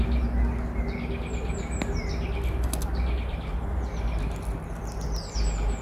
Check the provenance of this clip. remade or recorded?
recorded